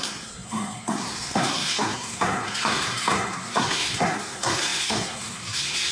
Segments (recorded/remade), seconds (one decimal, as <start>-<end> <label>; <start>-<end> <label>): 0.0-5.9 remade

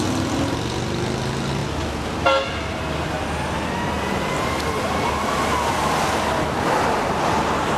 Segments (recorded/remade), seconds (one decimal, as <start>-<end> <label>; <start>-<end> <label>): 0.0-7.8 recorded

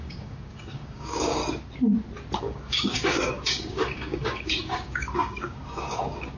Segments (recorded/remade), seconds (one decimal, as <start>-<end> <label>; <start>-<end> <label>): 0.0-1.4 remade; 1.4-2.4 recorded; 2.4-6.4 remade

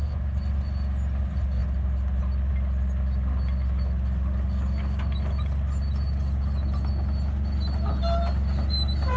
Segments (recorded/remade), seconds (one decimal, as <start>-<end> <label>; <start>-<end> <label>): 0.0-9.2 recorded

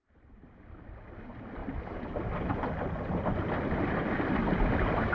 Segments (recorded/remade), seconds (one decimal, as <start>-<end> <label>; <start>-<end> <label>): 0.0-5.1 recorded